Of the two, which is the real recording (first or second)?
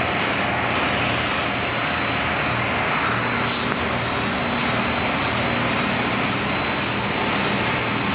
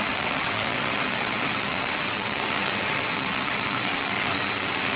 first